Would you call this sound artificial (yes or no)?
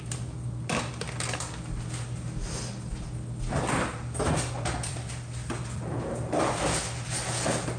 no